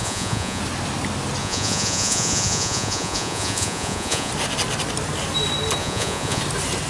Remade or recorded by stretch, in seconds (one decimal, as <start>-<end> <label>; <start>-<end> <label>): 0.0-0.6 remade; 0.6-1.4 recorded; 1.4-4.3 remade; 4.3-5.8 recorded; 5.8-6.4 remade; 6.4-6.9 recorded

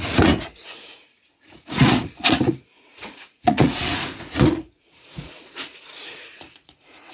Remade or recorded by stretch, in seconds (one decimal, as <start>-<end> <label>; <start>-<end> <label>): 0.0-7.1 remade